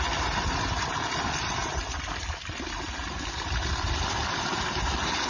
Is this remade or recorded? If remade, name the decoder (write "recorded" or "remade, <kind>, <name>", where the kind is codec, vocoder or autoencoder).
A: recorded